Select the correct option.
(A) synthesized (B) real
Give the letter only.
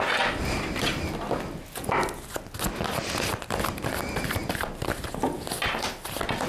B